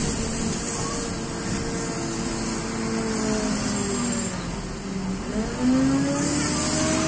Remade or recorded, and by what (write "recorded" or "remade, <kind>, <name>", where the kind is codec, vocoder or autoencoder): recorded